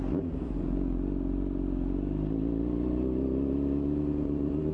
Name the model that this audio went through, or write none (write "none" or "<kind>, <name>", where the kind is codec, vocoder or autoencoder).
none